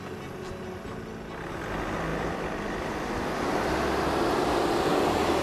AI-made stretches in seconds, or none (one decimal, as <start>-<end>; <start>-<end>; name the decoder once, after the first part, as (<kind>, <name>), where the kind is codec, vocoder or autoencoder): none